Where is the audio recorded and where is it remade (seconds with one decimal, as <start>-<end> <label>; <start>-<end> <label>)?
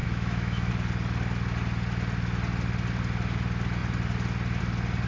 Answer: 0.0-0.7 remade; 0.7-5.1 recorded